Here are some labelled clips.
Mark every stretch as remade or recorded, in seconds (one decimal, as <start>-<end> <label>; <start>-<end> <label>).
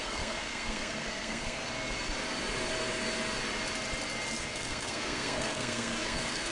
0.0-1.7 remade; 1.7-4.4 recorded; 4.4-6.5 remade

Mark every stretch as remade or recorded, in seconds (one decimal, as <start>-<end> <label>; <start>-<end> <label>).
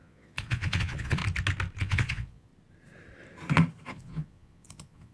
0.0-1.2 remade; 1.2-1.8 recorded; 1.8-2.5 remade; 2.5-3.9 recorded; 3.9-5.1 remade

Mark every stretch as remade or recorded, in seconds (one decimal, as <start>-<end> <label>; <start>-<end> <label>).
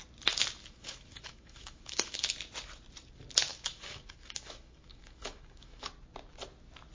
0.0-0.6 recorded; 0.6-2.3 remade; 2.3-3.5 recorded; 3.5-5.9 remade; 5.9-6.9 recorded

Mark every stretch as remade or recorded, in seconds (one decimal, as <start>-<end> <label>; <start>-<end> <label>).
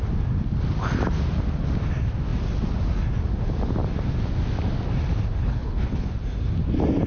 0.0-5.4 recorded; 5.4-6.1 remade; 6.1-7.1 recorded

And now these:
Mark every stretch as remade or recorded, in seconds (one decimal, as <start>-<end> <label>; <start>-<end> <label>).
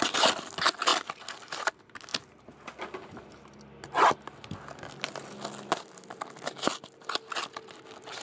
0.0-8.2 recorded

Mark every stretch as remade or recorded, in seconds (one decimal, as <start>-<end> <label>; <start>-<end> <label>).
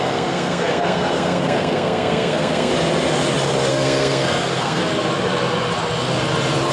0.0-2.7 remade; 2.7-3.7 recorded; 3.7-4.8 remade; 4.8-6.7 recorded